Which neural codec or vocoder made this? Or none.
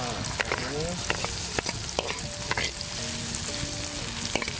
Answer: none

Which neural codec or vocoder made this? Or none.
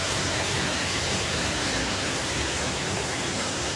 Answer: codec, SNAC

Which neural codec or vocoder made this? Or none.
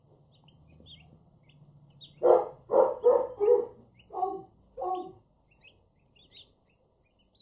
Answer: none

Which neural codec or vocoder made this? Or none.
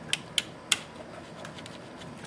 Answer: none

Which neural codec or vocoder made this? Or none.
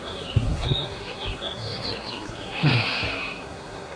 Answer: codec, SNAC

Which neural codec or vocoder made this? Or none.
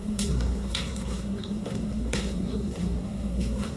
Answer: codec, SNAC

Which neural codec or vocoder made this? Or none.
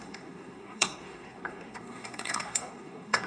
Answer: codec, SNAC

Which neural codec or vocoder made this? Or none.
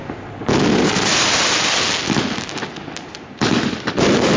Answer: none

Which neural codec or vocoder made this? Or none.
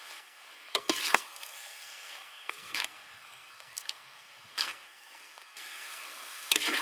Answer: codec, SNAC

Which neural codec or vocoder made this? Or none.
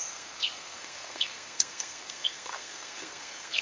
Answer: codec, SNAC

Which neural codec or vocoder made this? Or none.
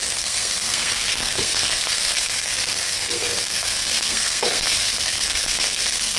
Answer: codec, SNAC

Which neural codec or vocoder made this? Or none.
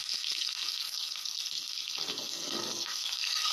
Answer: codec, SNAC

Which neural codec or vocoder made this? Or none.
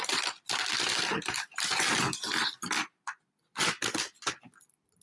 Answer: none